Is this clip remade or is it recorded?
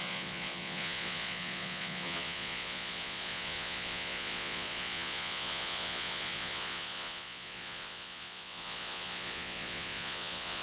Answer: remade